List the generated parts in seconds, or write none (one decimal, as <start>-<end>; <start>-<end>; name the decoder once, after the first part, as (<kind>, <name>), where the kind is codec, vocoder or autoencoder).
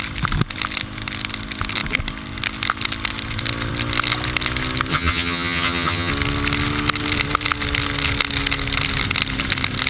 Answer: 4.9-6.1 (vocoder, HiFi-GAN)